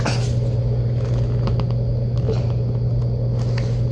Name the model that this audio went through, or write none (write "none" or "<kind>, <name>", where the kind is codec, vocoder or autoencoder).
none